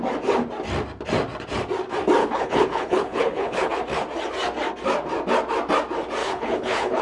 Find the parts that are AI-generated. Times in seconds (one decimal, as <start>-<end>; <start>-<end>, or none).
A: 2.2-3.7; 6.2-7.0